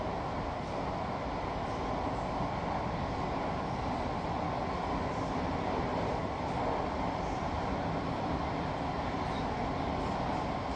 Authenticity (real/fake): real